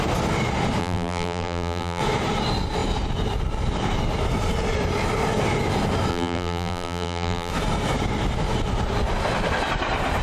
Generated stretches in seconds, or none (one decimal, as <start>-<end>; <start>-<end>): 0.8-2.0; 6.1-7.5